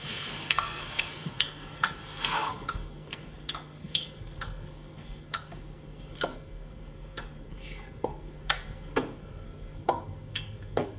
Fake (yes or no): yes